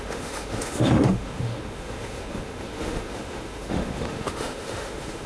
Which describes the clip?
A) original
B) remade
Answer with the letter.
B